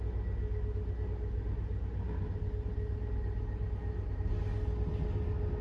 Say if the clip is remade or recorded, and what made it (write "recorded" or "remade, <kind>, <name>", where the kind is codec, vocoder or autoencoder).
recorded